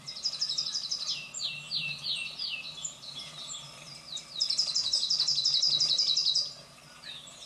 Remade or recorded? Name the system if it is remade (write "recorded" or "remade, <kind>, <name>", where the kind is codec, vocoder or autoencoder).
recorded